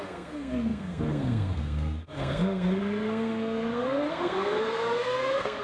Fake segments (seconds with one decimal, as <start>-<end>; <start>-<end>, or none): 0.0-5.6